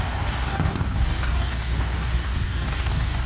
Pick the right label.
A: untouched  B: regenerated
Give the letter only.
B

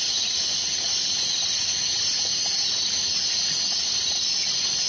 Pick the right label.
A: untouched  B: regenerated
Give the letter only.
A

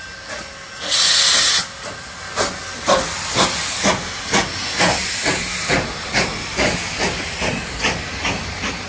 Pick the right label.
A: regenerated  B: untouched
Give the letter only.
B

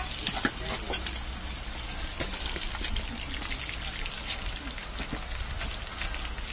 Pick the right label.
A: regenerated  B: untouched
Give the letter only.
B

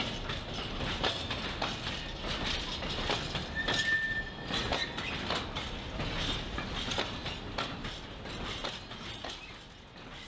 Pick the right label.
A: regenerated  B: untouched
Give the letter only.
B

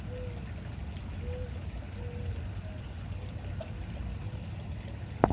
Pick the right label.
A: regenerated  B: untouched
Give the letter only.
B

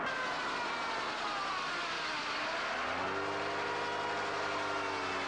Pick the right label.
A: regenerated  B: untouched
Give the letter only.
B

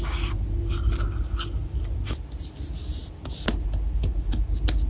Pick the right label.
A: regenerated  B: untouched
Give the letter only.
B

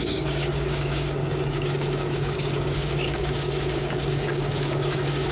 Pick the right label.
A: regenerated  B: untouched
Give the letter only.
A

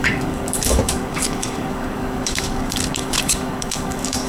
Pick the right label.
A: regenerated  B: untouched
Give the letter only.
A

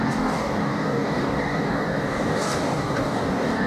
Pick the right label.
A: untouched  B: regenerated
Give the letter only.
B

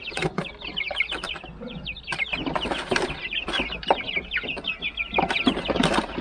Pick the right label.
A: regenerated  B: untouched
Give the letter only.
B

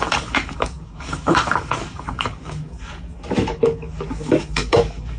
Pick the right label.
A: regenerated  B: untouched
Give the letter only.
A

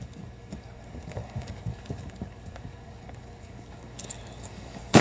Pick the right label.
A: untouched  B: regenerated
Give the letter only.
B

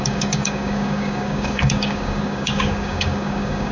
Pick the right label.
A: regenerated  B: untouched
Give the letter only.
A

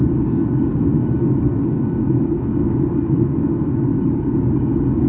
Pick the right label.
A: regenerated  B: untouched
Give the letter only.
A